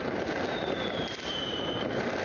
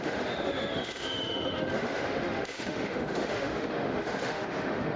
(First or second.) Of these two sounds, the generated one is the second